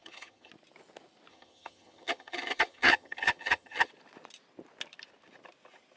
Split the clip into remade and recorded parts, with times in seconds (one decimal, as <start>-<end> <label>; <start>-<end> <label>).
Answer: 0.0-0.5 remade; 0.5-1.3 recorded; 1.3-3.9 remade; 3.9-6.0 recorded